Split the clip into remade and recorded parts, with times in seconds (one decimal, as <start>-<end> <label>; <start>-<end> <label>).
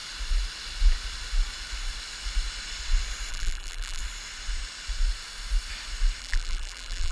0.0-3.3 recorded; 3.3-4.0 remade; 4.0-6.2 recorded; 6.2-7.1 remade